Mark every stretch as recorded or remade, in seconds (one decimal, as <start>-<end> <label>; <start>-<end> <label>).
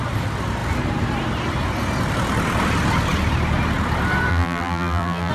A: 0.0-4.3 recorded; 4.3-5.3 remade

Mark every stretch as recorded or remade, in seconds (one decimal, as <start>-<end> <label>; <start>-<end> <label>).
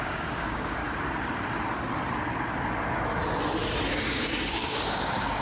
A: 0.0-0.8 remade; 0.8-3.9 recorded; 3.9-5.4 remade